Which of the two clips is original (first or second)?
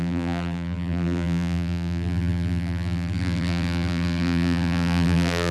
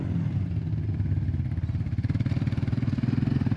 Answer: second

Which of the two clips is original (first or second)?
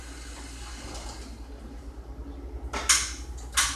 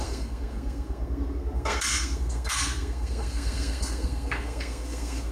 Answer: first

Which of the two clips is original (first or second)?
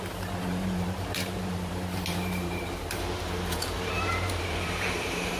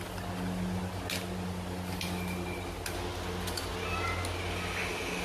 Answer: second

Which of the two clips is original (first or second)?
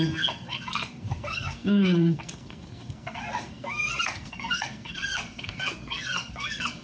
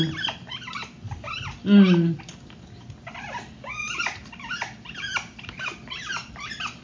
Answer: second